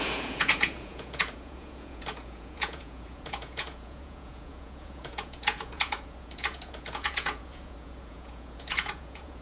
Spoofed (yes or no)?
yes